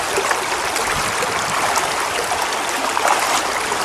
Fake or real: real